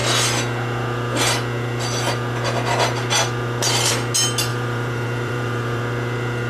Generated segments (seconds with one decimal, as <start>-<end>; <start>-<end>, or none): 4.5-5.8